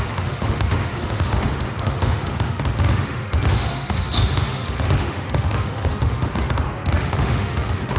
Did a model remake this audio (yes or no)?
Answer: yes